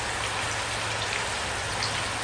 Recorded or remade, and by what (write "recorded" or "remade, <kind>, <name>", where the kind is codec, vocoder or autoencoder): recorded